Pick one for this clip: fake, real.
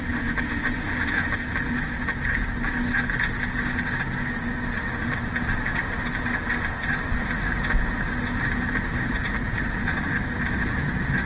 real